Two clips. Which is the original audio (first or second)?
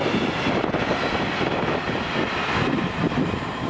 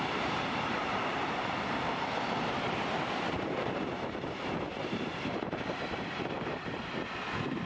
first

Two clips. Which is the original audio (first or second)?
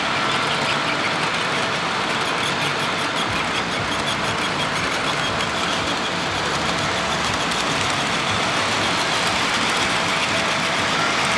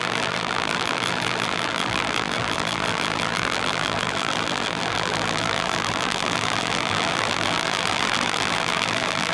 first